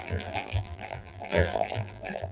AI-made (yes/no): yes